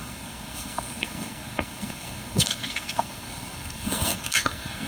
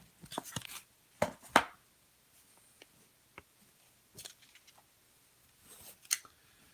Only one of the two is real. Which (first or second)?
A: second